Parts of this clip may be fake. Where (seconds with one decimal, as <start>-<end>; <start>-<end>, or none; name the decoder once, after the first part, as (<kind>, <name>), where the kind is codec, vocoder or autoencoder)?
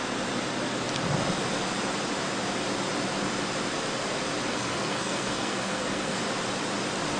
4.5-6.2 (codec, SNAC)